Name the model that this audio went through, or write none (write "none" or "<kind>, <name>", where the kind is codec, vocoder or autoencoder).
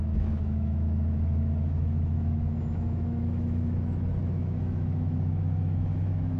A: autoencoder, DAC-VAE